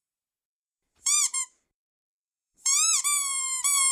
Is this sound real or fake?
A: fake